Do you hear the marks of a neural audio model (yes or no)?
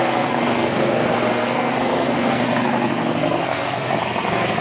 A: yes